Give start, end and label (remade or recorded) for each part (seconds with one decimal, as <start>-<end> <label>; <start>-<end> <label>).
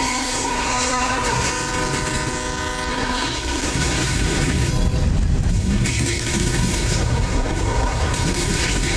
0.0-1.5 remade; 1.5-2.9 recorded; 2.9-4.7 remade; 4.7-5.5 recorded; 5.5-9.0 remade